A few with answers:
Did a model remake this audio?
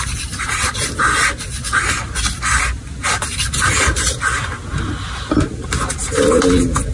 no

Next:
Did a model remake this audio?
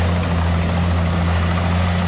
no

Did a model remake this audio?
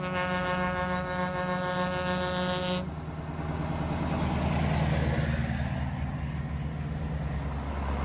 no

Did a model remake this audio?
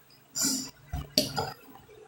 no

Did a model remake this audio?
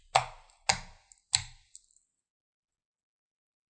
no